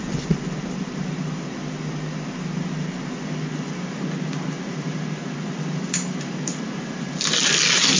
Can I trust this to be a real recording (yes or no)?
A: yes